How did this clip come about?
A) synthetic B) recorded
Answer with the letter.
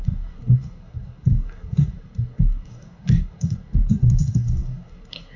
A